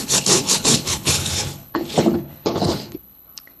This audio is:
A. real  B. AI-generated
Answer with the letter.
B